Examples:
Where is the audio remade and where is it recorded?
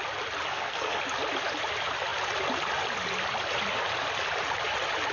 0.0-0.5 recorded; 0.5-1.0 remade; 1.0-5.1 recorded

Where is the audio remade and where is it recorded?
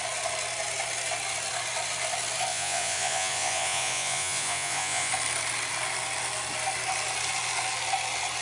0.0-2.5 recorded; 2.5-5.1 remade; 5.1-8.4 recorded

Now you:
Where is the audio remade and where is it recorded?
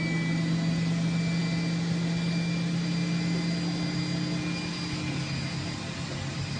0.0-6.6 recorded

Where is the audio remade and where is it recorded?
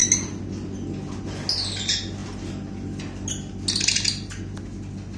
0.0-5.2 recorded